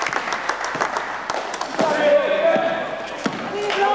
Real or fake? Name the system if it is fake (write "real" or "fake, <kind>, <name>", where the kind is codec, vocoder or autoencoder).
real